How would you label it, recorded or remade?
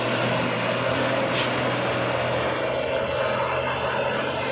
recorded